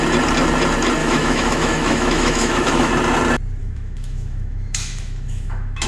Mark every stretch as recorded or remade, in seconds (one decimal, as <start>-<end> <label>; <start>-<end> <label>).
0.0-1.0 recorded; 1.0-2.9 remade; 2.9-3.6 recorded; 3.6-5.9 remade